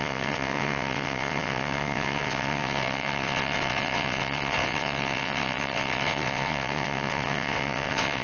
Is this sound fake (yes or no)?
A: yes